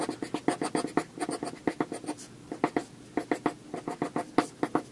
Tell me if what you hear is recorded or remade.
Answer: recorded